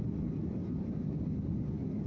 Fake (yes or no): no